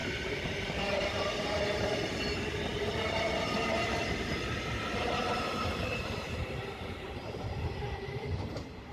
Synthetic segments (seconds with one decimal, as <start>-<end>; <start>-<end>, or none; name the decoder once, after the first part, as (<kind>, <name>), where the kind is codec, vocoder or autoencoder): 0.0-8.9 (vocoder, BigVGAN v2)